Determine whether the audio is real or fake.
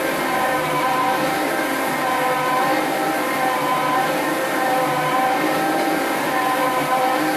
fake